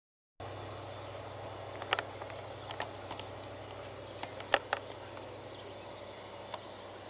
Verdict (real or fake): real